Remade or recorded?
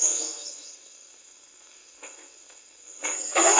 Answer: remade